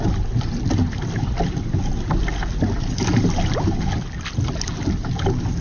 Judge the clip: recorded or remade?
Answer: recorded